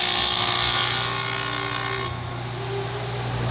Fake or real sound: real